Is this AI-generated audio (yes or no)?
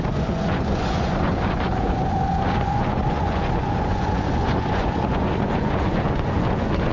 yes